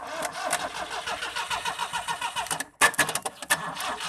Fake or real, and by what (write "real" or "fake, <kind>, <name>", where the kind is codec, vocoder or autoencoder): real